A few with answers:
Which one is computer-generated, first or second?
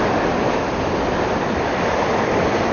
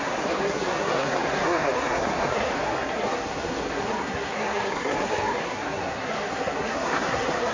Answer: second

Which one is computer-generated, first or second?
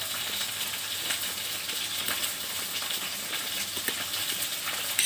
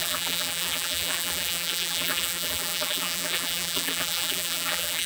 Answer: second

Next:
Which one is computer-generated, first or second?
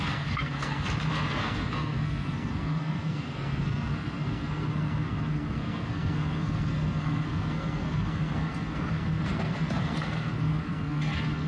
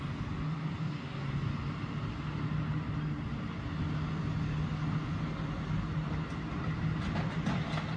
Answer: first